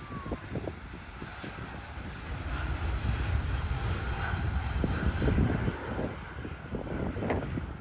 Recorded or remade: remade